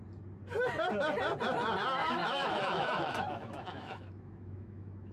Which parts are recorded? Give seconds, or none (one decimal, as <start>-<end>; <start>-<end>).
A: 0.0-2.0